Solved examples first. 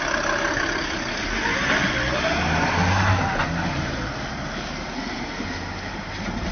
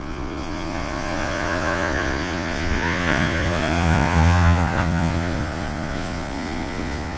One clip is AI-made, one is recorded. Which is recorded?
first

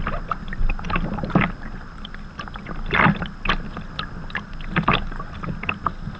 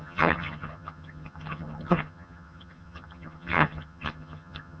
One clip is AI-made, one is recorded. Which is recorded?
first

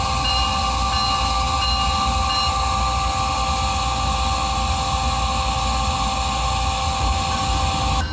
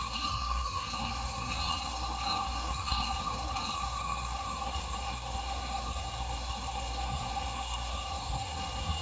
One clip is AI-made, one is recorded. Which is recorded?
first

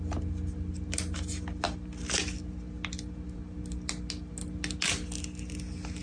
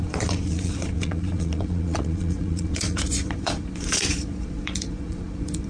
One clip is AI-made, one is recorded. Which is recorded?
first